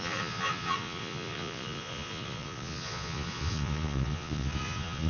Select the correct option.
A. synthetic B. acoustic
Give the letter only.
A